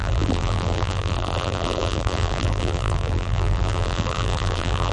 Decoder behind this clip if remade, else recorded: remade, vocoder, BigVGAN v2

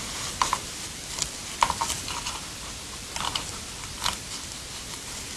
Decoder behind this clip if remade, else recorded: recorded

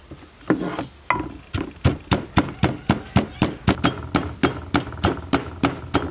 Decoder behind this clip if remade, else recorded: recorded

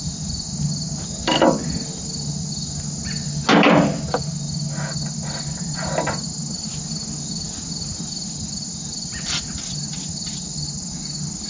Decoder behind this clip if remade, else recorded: recorded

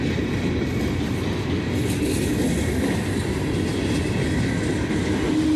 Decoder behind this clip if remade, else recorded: recorded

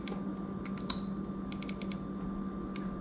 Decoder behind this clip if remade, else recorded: recorded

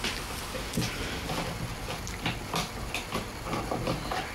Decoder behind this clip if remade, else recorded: recorded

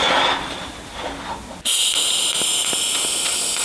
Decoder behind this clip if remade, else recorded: recorded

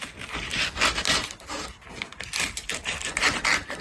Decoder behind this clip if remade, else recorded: recorded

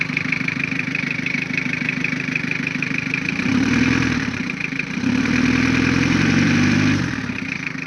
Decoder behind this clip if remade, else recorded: remade, vocoder, BigVGAN v2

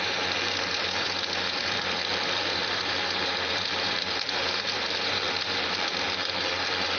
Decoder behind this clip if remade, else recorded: remade, vocoder, BigVGAN v2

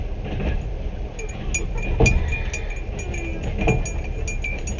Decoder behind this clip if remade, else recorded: recorded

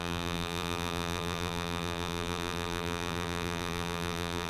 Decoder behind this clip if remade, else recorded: remade, vocoder, BigVGAN v2